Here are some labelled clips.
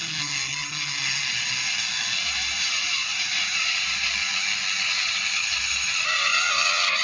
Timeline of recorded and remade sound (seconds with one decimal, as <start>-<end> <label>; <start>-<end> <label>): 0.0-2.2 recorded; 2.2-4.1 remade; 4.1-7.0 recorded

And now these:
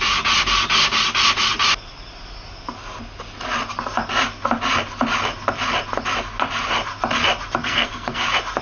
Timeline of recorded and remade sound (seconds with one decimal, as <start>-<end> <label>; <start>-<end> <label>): 0.0-7.6 recorded; 7.6-8.2 remade; 8.2-8.6 recorded

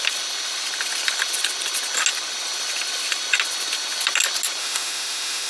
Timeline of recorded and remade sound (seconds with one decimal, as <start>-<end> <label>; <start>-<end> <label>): 0.0-4.6 recorded; 4.6-5.5 remade

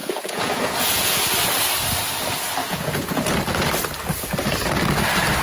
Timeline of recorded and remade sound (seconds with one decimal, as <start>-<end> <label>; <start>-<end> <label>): 0.0-1.2 remade; 1.2-2.6 recorded; 2.6-3.2 remade; 3.2-5.4 recorded

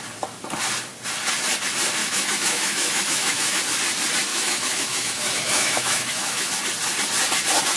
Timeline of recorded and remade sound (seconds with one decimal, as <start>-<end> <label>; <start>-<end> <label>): 0.0-2.0 recorded; 2.0-3.6 remade; 3.6-4.3 recorded; 4.3-6.5 remade; 6.5-7.8 recorded

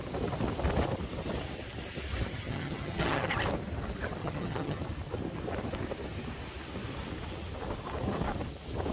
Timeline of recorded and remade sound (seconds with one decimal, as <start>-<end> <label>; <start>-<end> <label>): 0.0-2.3 recorded; 2.3-3.3 remade; 3.3-4.2 recorded; 4.2-4.8 remade; 4.8-8.9 recorded

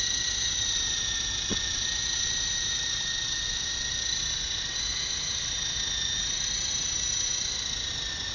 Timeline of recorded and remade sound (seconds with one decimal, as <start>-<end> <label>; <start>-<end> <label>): 0.0-1.5 recorded; 1.5-4.2 remade; 4.2-8.3 recorded